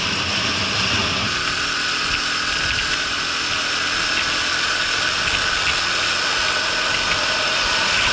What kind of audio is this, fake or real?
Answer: real